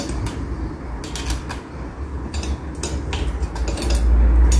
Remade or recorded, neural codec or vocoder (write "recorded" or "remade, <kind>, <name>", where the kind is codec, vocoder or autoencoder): recorded